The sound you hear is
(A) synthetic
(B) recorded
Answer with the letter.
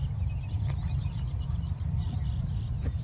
B